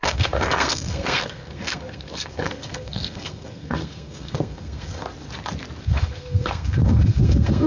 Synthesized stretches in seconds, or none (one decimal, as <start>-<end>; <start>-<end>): 0.0-5.0; 5.8-7.7